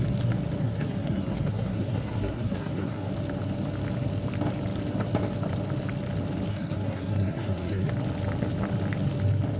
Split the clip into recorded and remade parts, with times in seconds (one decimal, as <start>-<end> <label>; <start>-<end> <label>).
0.0-0.6 recorded; 0.6-3.1 remade; 3.1-6.5 recorded; 6.5-7.9 remade; 7.9-9.6 recorded